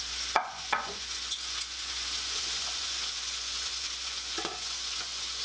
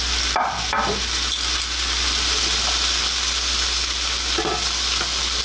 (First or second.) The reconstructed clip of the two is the first